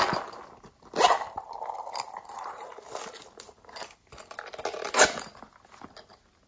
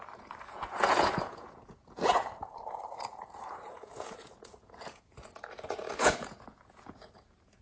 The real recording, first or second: first